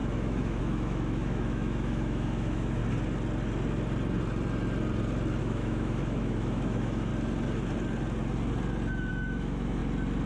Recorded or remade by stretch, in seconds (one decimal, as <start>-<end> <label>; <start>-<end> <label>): 0.0-2.8 remade; 2.8-5.4 recorded; 5.4-7.1 remade; 7.1-9.1 recorded; 9.1-9.8 remade; 9.8-10.3 recorded